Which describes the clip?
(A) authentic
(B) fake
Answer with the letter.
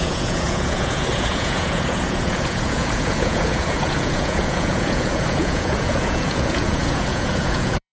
B